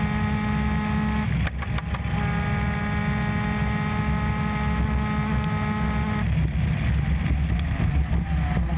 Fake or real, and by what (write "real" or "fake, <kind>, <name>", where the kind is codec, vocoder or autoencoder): real